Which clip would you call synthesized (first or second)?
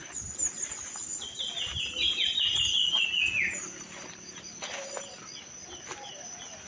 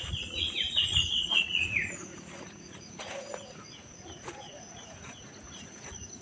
second